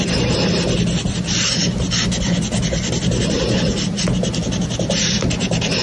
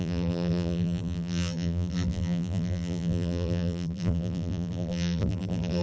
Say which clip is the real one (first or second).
first